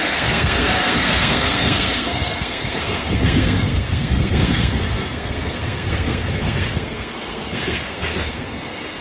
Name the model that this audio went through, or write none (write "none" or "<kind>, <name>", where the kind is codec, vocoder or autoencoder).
codec, SNAC